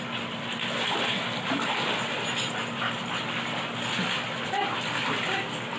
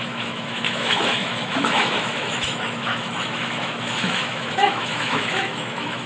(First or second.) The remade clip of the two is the second